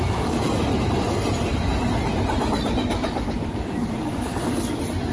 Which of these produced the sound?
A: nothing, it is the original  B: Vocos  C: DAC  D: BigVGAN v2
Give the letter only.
D